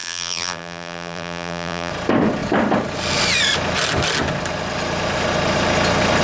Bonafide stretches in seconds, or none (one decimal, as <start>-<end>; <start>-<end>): 1.9-6.2